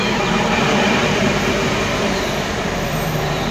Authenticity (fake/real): fake